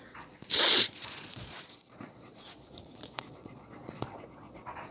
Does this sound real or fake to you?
fake